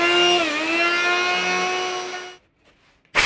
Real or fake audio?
real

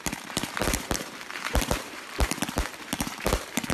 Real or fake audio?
fake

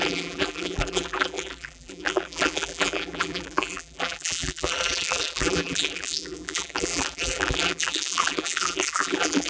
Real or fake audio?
fake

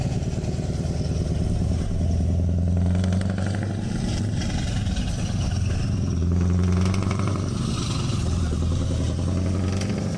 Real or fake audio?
fake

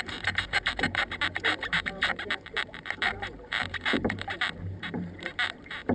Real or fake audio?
fake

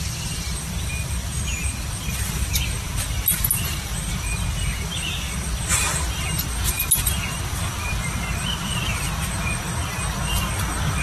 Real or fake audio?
real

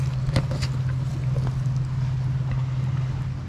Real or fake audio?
real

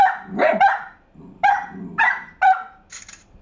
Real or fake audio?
real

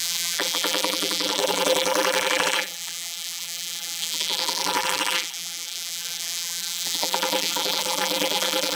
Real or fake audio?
fake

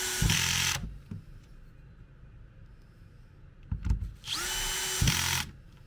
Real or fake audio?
real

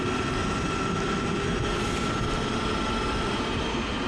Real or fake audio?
real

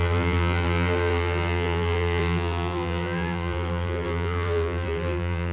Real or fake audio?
fake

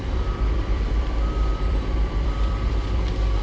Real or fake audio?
fake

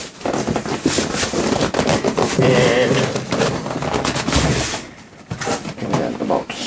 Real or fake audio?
real